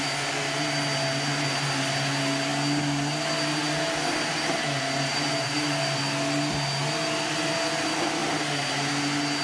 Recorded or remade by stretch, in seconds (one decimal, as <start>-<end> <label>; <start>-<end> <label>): 0.0-9.4 recorded